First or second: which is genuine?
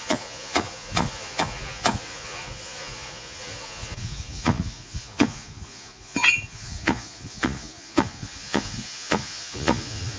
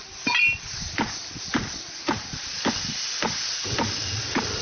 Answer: second